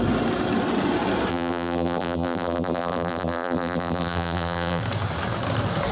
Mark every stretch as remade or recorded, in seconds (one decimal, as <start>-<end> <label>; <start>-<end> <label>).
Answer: 0.0-1.3 recorded; 1.3-4.8 remade; 4.8-5.9 recorded